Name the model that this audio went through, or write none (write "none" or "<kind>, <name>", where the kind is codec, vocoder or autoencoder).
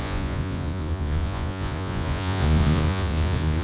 vocoder, Vocos